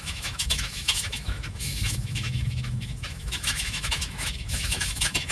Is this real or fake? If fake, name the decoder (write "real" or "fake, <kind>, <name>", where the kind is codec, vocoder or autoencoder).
fake, autoencoder, DAC-VAE